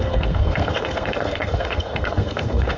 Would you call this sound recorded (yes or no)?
no